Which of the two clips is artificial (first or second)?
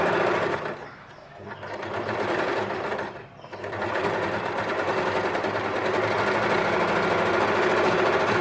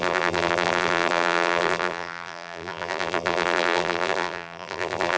second